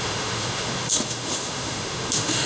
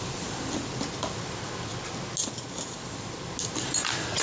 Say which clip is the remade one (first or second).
first